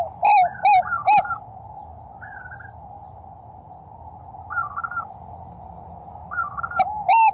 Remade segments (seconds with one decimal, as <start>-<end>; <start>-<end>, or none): none